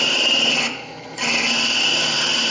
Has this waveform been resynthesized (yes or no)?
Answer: no